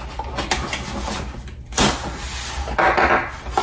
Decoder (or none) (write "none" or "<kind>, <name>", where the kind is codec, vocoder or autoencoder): none